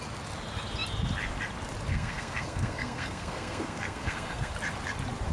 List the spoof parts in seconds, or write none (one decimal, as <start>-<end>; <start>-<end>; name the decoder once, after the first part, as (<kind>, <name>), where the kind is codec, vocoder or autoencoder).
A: 1.9-4.5 (codec, SNAC)